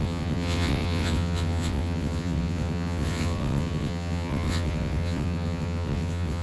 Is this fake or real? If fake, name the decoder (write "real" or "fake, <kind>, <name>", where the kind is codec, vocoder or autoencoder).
fake, vocoder, WaveNeXt